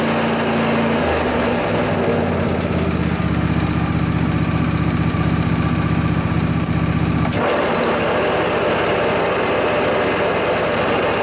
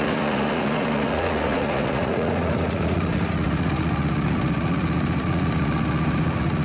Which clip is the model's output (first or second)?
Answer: second